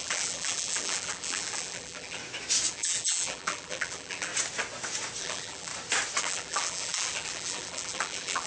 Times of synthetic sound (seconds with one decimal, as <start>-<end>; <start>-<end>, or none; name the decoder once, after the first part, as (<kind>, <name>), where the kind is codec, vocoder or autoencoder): 0.0-2.2 (vocoder, BigVGAN v2); 2.7-4.3; 5.2-5.7; 6.2-8.5